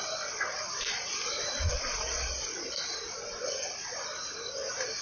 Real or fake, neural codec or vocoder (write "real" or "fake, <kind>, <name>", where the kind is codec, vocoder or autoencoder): real